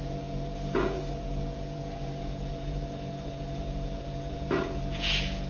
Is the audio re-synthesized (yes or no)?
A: yes